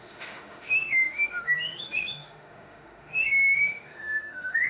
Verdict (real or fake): fake